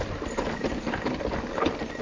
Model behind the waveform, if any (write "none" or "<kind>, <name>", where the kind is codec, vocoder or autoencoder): none